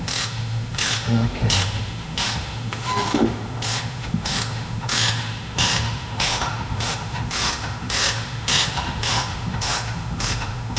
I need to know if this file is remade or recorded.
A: remade